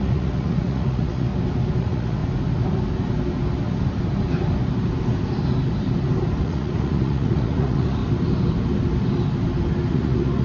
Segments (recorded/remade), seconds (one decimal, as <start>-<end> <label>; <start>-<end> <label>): 0.0-1.3 remade; 1.3-1.8 recorded; 1.8-2.2 remade; 2.2-6.4 recorded; 6.4-8.0 remade; 8.0-9.9 recorded; 9.9-10.4 remade

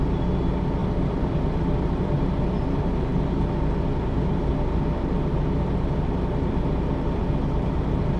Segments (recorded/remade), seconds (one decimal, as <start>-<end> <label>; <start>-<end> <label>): 0.0-0.8 recorded; 0.8-2.5 remade; 2.5-8.2 recorded